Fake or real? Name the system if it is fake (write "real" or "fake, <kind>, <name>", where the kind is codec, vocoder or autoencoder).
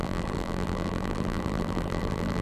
fake, vocoder, BigVGAN v2